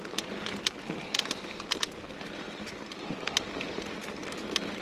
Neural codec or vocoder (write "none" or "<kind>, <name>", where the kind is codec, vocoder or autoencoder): none